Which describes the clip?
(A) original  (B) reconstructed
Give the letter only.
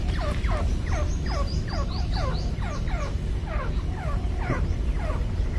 A